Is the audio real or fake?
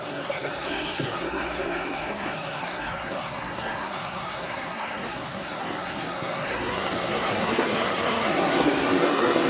fake